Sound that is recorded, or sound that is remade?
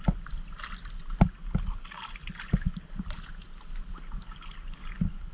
recorded